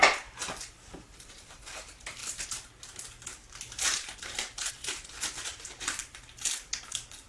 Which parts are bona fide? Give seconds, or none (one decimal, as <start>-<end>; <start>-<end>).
none